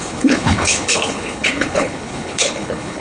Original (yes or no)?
no